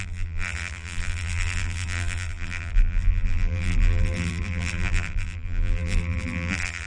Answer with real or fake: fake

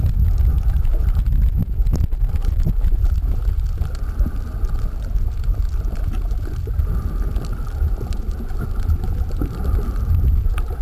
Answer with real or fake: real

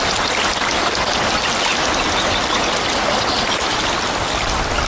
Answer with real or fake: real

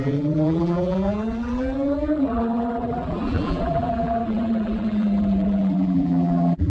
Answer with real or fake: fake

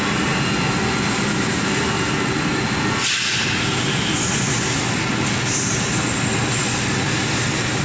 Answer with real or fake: real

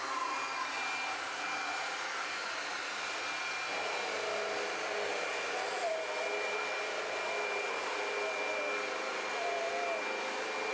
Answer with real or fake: real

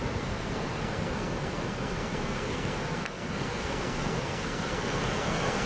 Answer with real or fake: fake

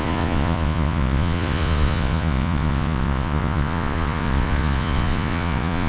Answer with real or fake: fake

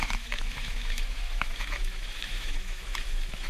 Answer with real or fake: fake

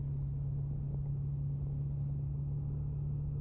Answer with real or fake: real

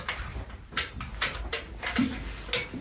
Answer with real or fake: real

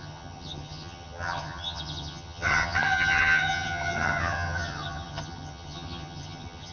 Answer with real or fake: fake